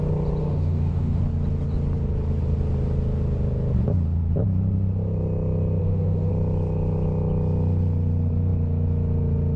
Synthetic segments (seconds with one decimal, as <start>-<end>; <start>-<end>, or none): 0.4-1.2; 5.8-6.3